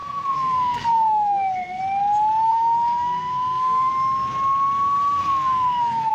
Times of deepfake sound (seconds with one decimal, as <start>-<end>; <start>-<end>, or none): 0.0-1.8; 2.5-3.9; 5.2-6.1